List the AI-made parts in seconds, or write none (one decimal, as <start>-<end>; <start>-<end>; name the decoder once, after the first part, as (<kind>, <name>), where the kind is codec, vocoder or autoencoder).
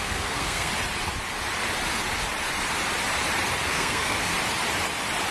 0.0-0.7 (codec, SNAC); 3.7-4.3